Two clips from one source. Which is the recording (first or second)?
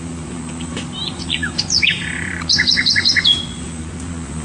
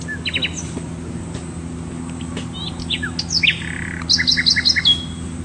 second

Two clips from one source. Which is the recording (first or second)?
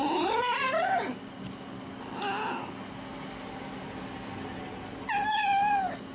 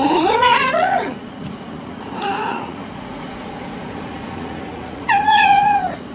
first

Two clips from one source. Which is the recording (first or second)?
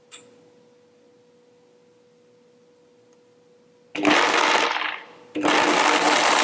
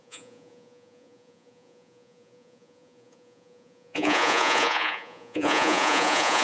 first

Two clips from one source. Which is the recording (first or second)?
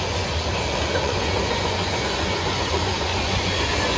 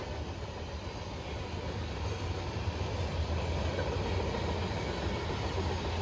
second